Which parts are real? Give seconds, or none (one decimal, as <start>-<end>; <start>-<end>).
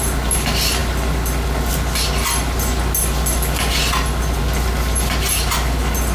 0.0-6.1